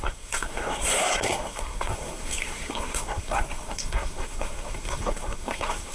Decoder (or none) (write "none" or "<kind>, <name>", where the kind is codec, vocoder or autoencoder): codec, SNAC